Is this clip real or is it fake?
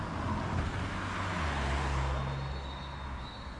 real